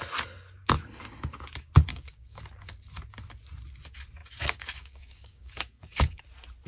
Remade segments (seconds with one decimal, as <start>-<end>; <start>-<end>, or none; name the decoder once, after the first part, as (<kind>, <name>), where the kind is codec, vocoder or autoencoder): 1.9-2.4 (codec, DAC); 4.2-6.2